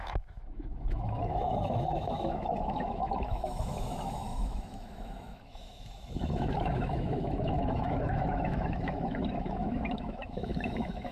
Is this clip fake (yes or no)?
yes